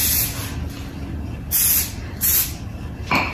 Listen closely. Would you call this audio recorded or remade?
recorded